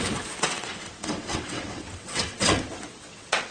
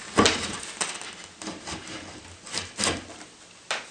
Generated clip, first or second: first